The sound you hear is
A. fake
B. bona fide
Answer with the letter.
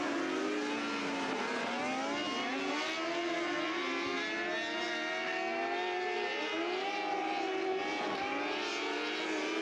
B